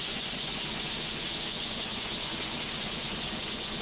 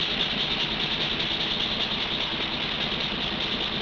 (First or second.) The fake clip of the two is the first